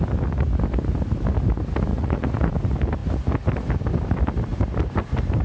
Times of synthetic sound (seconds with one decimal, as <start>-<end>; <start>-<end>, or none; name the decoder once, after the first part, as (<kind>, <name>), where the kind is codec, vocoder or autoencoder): 1.9-2.5 (vocoder, Vocos)